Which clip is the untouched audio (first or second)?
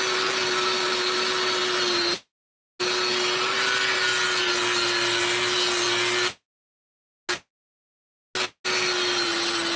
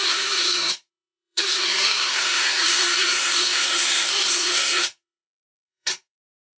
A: first